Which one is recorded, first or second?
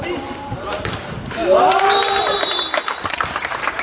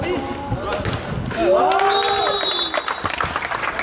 second